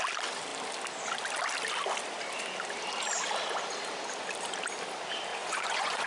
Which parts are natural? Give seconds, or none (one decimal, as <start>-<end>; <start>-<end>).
0.0-5.3